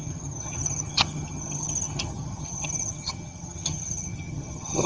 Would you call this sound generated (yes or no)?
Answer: yes